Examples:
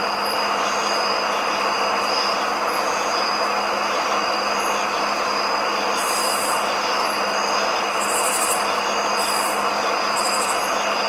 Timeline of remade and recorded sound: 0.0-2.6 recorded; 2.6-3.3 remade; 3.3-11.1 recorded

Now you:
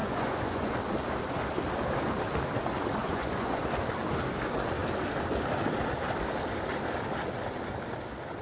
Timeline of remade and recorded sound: 0.0-0.7 remade; 0.7-3.0 recorded; 3.0-3.6 remade; 3.6-8.4 recorded

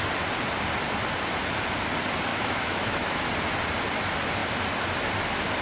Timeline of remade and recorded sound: 0.0-2.3 recorded; 2.3-3.3 remade; 3.3-5.6 recorded

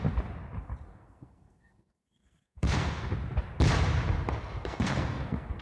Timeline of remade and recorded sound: 0.0-0.9 recorded; 0.9-3.1 remade; 3.1-4.4 recorded; 4.4-5.6 remade